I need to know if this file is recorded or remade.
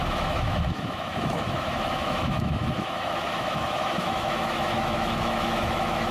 remade